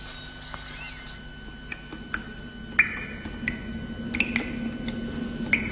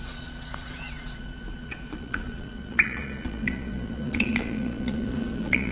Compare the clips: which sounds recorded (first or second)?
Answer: first